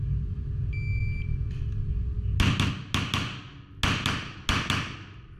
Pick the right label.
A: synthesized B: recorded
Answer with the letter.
B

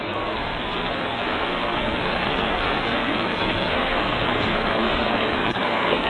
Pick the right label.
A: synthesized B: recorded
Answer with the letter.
A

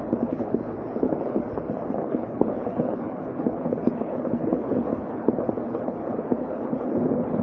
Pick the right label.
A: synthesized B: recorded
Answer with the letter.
A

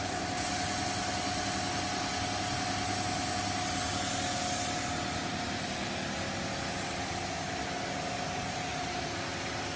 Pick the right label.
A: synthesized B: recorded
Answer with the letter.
B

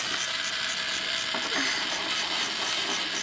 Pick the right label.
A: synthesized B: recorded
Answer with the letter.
B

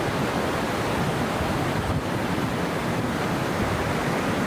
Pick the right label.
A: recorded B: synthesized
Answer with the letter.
B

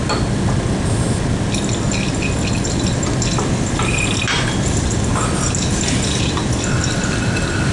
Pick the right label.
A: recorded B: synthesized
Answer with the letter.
A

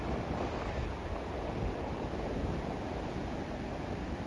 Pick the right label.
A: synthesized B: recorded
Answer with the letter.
B